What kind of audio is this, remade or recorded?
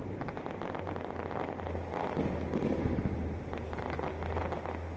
recorded